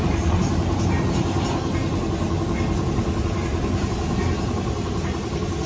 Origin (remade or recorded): recorded